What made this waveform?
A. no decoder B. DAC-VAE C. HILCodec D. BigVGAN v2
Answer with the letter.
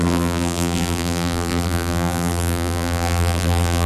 D